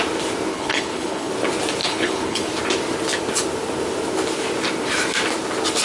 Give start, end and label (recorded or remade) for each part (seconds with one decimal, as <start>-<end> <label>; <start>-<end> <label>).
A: 0.0-0.5 recorded; 0.5-1.3 remade; 1.3-1.8 recorded; 1.8-2.5 remade; 2.5-5.8 recorded